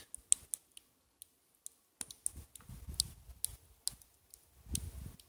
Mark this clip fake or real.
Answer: real